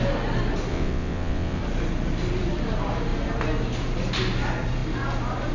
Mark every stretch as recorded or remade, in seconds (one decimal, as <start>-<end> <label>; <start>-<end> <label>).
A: 0.0-0.7 recorded; 0.7-1.6 remade; 1.6-5.5 recorded